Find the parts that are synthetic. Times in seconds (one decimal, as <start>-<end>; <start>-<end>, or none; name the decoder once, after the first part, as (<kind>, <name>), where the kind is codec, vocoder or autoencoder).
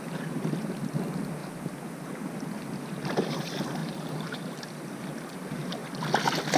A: 3.8-5.0 (vocoder, BigVGAN v2)